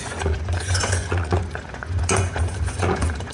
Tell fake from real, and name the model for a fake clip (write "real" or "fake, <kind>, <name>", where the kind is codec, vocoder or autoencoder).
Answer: fake, vocoder, Vocos